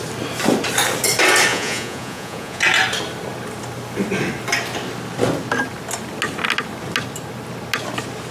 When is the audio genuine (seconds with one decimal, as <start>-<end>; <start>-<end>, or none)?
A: 0.0-1.5; 2.6-8.3